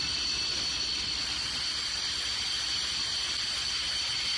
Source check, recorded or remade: recorded